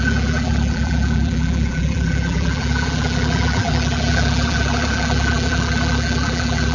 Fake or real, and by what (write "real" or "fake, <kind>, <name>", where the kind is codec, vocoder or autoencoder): fake, vocoder, BigVGAN v2